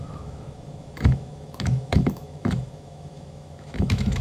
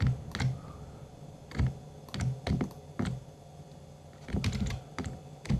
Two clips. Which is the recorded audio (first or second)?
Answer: second